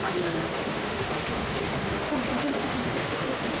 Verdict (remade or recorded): remade